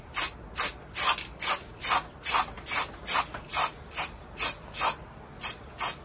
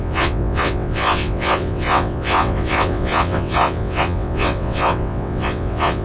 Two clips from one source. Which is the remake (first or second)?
second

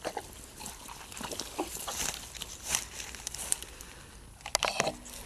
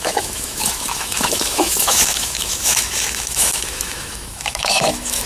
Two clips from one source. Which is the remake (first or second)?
second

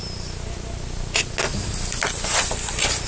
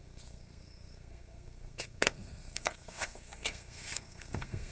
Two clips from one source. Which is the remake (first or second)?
second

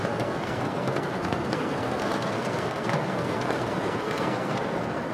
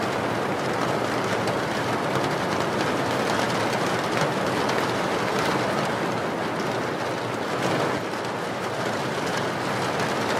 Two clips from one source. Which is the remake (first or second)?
first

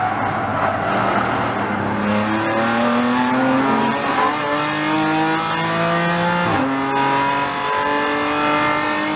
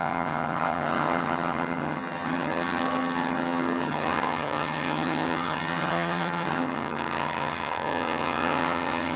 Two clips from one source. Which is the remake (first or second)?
second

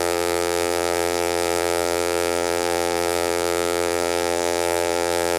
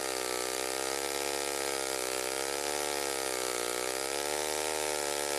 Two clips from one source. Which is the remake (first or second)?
first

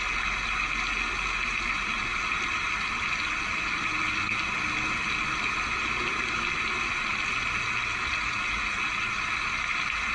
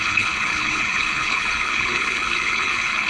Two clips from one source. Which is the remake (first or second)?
second